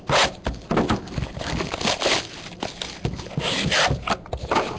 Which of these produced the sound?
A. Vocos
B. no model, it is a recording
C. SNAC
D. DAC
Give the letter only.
B